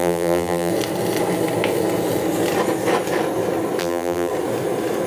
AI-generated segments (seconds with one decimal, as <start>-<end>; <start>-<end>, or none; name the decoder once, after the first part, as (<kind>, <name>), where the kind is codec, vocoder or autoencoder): 0.0-0.7 (vocoder, BigVGAN v2); 3.8-4.3